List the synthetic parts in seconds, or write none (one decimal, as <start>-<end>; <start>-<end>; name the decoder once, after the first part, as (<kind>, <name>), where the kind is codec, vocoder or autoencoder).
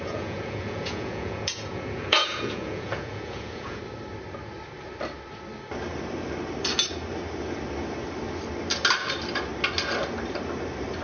0.0-3.8 (vocoder, Vocos)